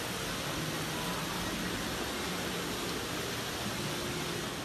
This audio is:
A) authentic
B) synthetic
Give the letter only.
A